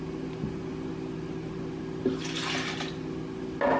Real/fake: real